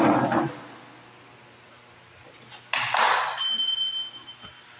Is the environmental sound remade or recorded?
recorded